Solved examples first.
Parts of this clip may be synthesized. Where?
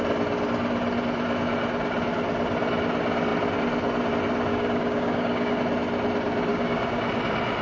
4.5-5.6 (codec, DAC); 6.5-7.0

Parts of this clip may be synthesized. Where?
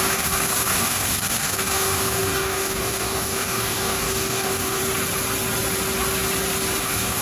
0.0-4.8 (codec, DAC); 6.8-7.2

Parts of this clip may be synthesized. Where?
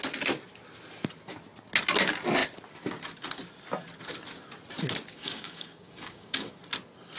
5.1-6.6 (codec, DAC)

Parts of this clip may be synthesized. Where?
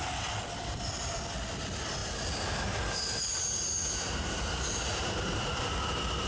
none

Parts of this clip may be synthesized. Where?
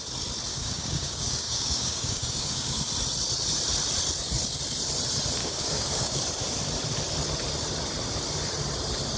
0.5-2.8 (codec, DAC); 5.4-6.2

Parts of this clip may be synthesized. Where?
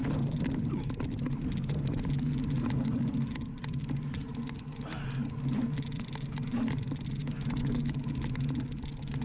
7.2-7.9 (codec, DAC)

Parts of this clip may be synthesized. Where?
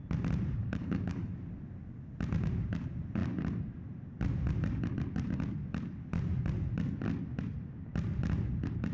0.6-1.3 (codec, DAC)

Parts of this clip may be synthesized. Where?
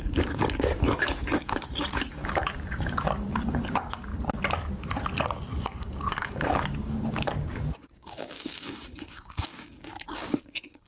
0.0-4.1 (codec, DAC); 5.6-10.9